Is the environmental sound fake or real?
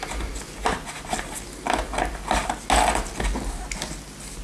real